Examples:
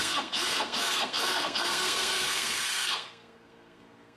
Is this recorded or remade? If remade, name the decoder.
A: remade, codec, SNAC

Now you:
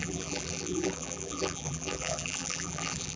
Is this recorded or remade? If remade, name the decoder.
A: remade, vocoder, BigVGAN v2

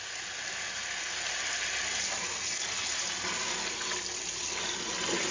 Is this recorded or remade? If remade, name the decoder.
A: recorded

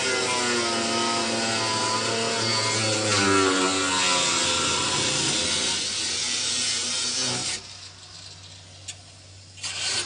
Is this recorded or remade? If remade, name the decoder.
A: recorded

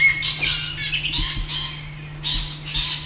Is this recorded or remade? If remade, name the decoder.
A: recorded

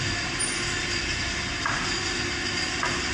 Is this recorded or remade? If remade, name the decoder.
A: recorded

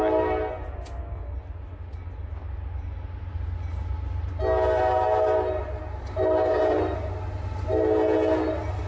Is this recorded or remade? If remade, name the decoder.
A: recorded